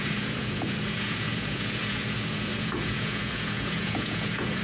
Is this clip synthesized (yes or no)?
yes